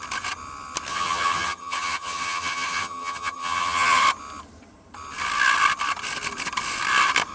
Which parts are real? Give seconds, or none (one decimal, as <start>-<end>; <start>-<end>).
0.0-0.9; 4.0-7.3